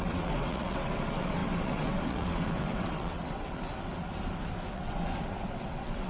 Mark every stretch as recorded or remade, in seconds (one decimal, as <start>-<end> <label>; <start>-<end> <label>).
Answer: 0.0-3.7 remade; 3.7-4.7 recorded; 4.7-6.1 remade